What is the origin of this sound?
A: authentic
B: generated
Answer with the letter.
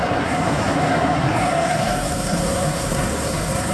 B